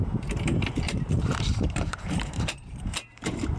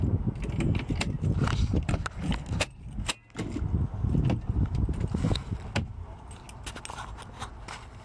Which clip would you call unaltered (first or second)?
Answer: second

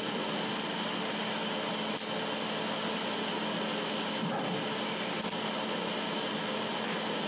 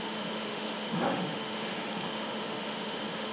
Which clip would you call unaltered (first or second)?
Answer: first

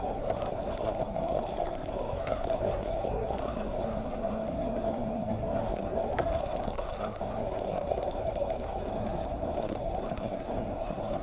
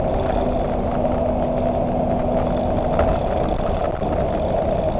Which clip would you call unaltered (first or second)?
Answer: second